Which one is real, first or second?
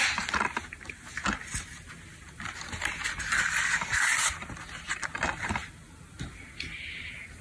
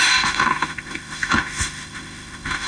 first